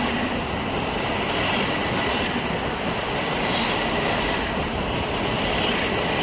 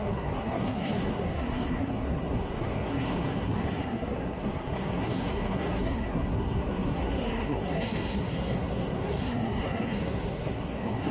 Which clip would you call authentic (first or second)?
first